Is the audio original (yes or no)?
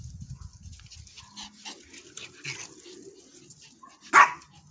yes